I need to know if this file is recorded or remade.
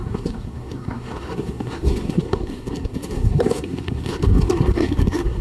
remade